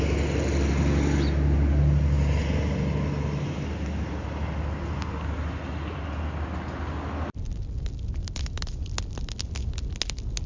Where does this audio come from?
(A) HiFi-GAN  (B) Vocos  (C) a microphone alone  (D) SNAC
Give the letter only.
C